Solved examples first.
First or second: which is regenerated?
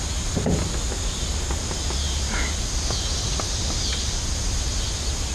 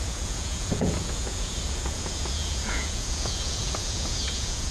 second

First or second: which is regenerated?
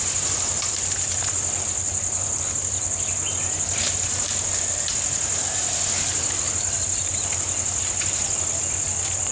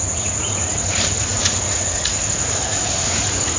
second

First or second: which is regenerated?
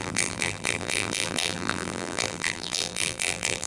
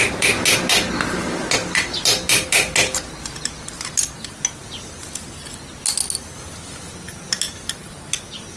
first